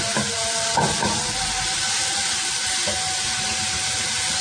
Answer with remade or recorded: recorded